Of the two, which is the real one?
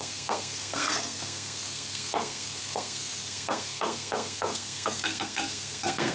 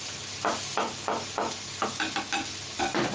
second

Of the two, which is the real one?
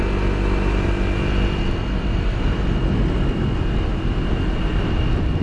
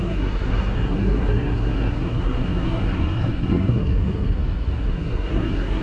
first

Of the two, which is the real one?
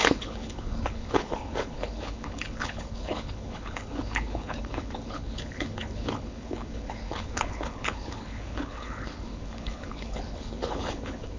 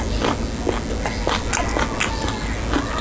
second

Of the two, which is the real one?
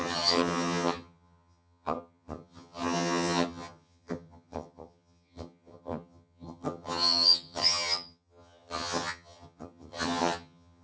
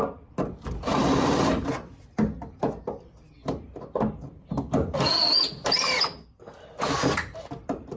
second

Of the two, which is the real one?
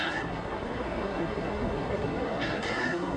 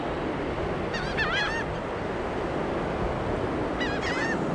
second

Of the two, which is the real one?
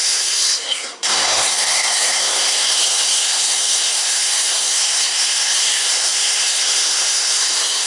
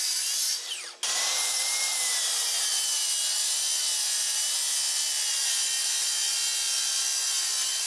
second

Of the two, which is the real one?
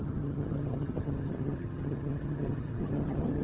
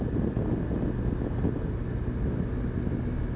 second